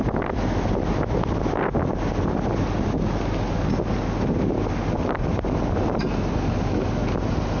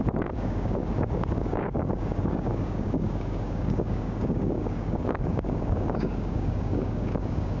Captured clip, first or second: first